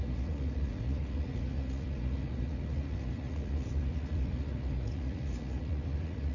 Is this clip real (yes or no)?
no